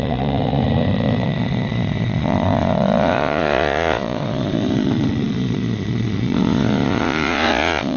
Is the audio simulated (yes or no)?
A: yes